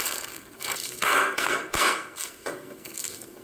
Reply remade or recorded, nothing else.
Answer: remade